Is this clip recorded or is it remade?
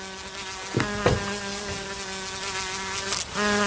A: recorded